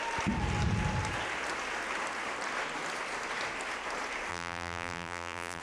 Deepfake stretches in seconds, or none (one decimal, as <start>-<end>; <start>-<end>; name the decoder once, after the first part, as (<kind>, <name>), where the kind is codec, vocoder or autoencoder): 4.3-5.6 (vocoder, BigVGAN v2)